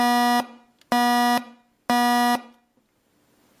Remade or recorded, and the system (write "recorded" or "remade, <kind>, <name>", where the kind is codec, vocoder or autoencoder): recorded